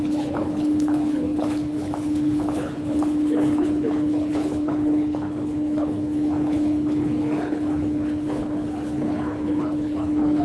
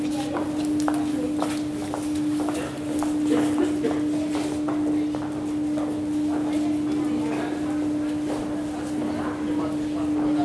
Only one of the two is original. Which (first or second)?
second